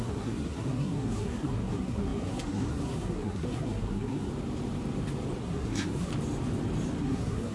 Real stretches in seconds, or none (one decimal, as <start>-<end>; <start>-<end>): 4.3-5.4; 6.1-7.0